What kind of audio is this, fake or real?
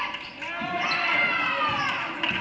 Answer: real